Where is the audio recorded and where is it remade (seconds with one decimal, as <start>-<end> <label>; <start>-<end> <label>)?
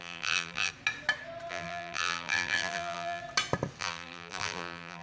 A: 0.0-0.7 remade; 0.7-1.5 recorded; 1.5-3.2 remade; 3.2-3.8 recorded; 3.8-5.0 remade